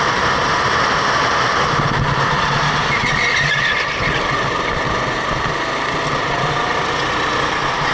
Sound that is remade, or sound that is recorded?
recorded